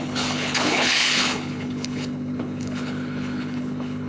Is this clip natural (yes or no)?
no